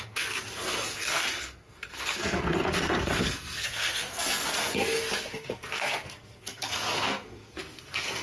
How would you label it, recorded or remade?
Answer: remade